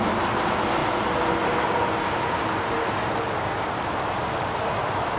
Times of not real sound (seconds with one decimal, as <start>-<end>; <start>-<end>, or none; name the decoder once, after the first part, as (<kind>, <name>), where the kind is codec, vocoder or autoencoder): none